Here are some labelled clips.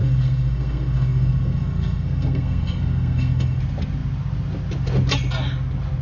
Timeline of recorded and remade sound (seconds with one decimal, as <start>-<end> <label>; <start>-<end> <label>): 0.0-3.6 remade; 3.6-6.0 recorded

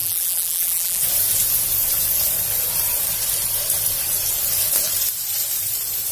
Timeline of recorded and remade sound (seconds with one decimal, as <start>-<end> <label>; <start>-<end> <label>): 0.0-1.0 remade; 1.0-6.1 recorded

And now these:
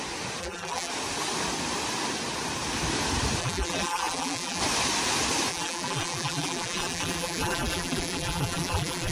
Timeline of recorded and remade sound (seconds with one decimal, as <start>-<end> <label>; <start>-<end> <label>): 0.0-0.4 recorded; 0.4-0.9 remade; 0.9-3.4 recorded; 3.4-4.6 remade; 4.6-5.5 recorded; 5.5-9.1 remade

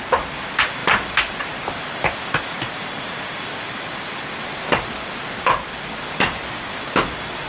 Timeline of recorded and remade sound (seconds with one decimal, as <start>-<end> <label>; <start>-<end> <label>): 0.0-7.5 recorded

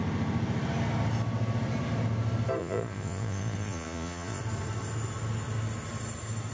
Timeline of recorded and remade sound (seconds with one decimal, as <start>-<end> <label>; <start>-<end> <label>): 0.0-2.6 recorded; 2.6-4.4 remade; 4.4-6.5 recorded